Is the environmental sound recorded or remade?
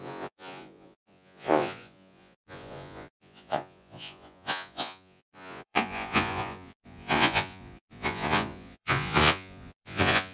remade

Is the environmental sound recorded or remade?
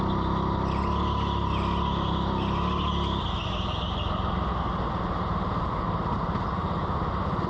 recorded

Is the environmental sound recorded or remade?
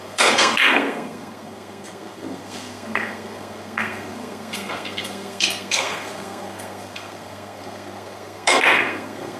remade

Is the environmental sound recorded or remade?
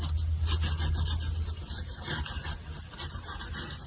recorded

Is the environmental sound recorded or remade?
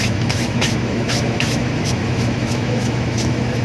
remade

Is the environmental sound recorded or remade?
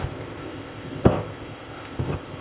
remade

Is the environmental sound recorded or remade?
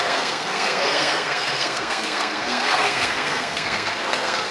remade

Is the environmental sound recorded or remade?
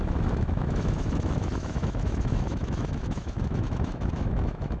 remade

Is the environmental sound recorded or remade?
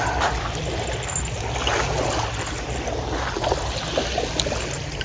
recorded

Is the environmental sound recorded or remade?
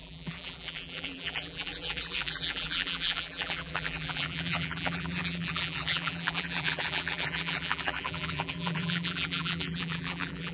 remade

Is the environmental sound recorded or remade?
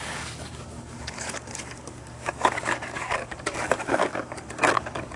remade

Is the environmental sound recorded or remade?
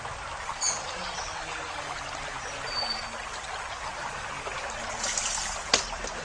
recorded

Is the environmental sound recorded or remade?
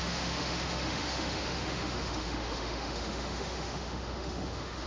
remade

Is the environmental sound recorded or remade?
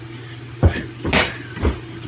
recorded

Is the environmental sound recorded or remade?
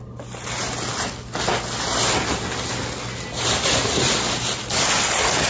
recorded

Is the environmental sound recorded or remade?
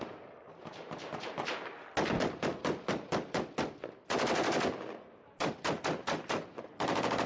recorded